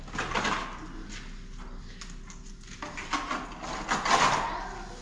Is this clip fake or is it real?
real